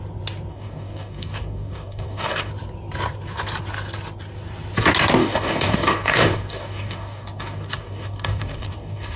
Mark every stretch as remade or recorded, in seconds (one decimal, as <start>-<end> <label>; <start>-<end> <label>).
0.0-0.5 recorded; 0.5-2.5 remade; 2.5-5.2 recorded; 5.2-9.2 remade